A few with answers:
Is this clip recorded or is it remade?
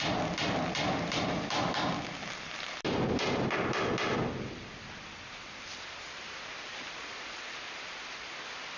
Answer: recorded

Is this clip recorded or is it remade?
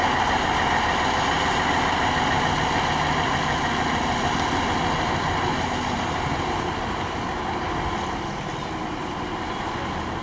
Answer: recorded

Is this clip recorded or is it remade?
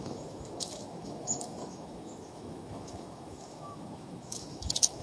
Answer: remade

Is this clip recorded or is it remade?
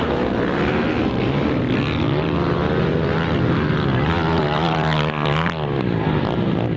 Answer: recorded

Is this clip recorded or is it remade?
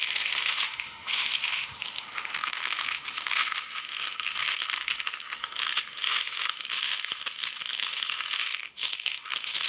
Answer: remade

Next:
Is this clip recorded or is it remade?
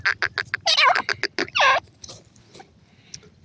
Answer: recorded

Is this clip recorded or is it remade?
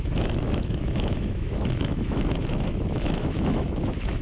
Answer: remade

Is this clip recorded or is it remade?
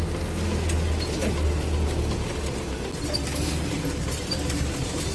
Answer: recorded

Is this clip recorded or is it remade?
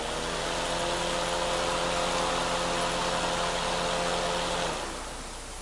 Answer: recorded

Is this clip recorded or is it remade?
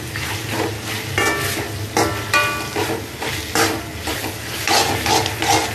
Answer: recorded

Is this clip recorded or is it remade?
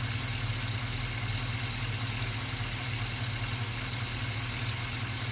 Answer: recorded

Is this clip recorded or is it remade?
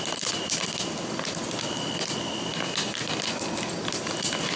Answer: recorded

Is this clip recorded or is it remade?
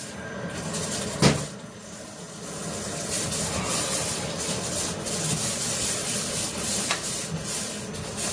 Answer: recorded